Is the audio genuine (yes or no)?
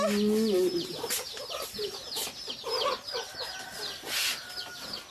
yes